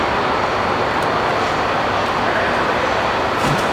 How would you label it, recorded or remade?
remade